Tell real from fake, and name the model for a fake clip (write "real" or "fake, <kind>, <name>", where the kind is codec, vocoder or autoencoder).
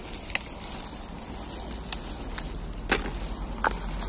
real